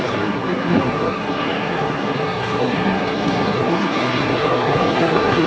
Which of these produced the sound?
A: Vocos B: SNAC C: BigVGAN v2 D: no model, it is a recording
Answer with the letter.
B